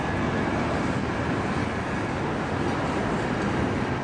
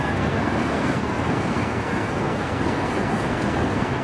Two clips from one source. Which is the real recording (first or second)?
first